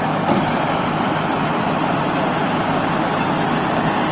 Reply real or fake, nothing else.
real